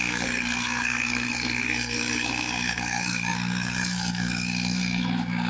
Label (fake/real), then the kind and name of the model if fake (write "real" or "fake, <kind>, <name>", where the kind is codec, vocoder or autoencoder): fake, codec, SNAC